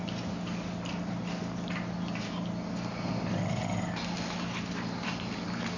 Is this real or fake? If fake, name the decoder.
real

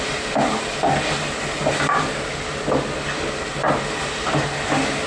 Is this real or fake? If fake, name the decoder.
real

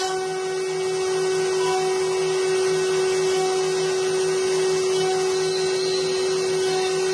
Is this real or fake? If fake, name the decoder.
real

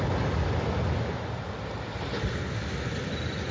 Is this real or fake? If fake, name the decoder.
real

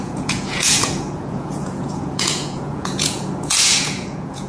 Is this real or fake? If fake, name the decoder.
fake, vocoder, Vocos